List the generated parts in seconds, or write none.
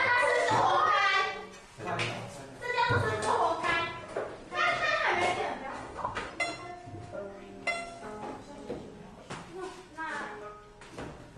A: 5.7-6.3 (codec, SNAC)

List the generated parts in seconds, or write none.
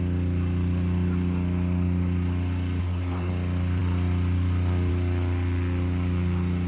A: 2.8-3.3 (codec, SNAC)